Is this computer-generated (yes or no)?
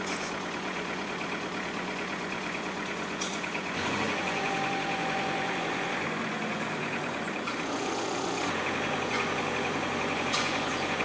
yes